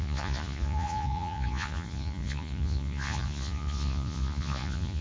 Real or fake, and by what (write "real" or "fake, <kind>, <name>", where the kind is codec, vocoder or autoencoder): fake, vocoder, Vocos